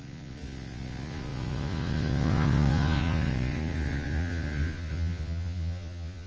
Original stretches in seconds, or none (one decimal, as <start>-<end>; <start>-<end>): none